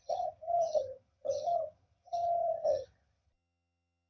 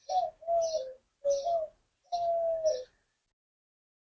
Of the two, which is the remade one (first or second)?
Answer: first